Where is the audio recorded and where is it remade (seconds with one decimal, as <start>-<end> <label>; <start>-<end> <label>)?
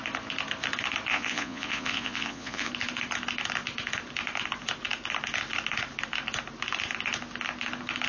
0.0-1.1 recorded; 1.1-2.7 remade; 2.7-8.1 recorded